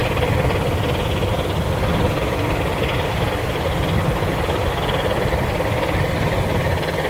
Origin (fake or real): real